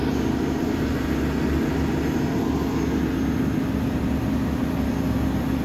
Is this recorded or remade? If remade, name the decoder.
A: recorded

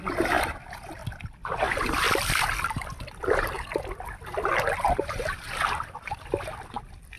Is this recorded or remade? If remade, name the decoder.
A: remade, vocoder, BigVGAN v2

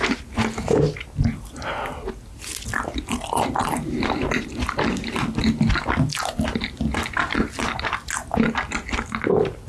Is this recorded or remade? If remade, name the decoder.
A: recorded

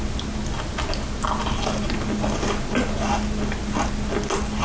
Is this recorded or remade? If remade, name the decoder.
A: recorded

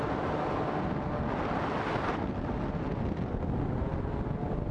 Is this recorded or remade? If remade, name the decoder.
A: recorded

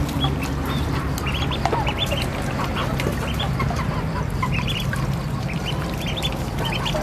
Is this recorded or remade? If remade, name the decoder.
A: recorded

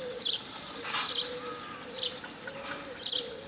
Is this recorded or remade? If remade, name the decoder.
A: recorded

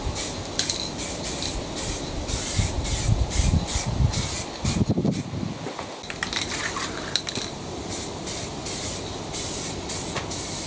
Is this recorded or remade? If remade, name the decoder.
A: recorded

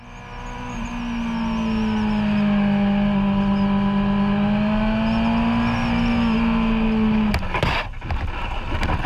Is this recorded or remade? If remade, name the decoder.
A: recorded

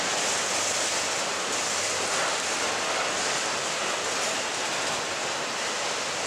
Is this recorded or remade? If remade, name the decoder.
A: recorded